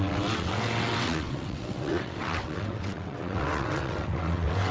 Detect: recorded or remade remade